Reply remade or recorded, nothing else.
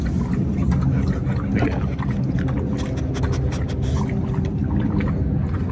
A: recorded